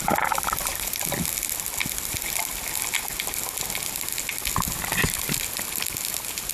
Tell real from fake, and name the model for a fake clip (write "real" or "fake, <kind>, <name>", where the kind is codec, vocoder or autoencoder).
real